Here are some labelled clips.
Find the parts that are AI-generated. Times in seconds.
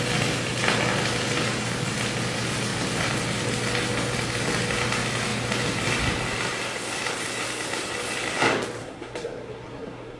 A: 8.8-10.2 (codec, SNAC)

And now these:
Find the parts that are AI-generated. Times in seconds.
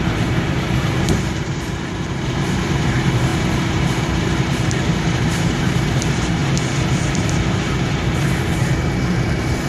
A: 0.0-9.7 (vocoder, BigVGAN v2)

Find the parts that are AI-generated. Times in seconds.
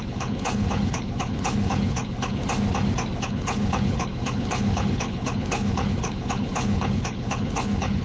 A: 0.0-2.4 (codec, HILCodec); 3.2-8.0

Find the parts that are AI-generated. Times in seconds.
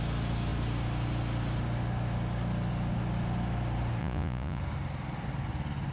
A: 4.0-4.6 (vocoder, Vocos)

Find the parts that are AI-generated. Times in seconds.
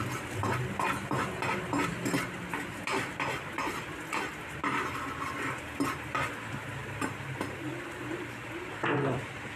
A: none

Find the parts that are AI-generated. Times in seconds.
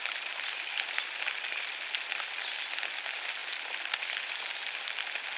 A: none